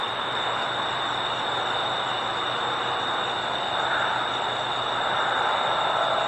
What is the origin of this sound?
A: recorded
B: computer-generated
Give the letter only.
A